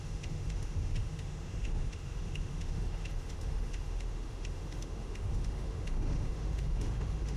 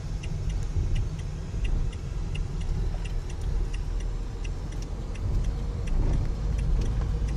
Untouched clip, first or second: second